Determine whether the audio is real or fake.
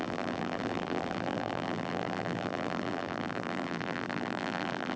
fake